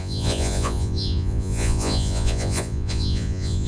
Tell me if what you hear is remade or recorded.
remade